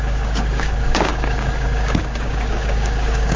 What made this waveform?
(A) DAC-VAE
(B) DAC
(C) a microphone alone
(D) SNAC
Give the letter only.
B